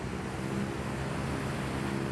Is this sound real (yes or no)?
yes